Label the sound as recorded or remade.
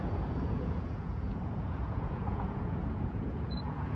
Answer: remade